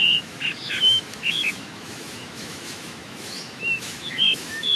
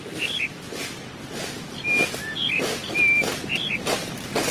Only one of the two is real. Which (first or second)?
second